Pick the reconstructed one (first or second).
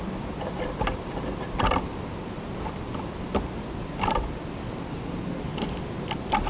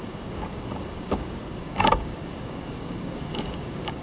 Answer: second